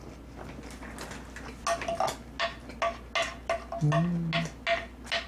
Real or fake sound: real